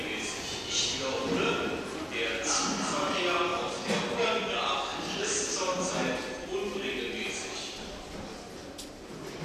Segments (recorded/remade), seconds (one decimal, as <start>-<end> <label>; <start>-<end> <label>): 0.0-4.9 recorded; 4.9-5.9 remade; 5.9-9.4 recorded

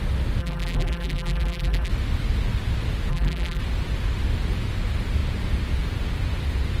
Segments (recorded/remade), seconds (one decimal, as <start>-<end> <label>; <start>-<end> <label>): 0.0-0.4 recorded; 0.4-1.9 remade; 1.9-3.1 recorded; 3.1-3.6 remade; 3.6-6.8 recorded

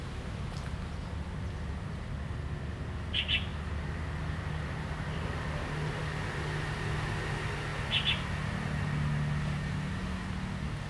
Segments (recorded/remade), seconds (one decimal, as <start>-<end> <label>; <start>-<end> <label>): 0.0-10.9 recorded

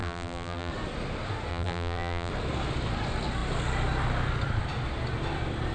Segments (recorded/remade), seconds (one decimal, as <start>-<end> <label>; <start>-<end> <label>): 0.0-0.7 remade; 0.7-1.5 recorded; 1.5-2.3 remade; 2.3-5.7 recorded